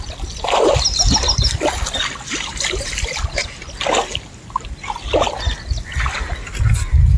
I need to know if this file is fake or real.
real